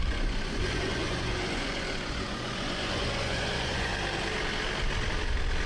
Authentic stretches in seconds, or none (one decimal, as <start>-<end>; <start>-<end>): 3.9-5.7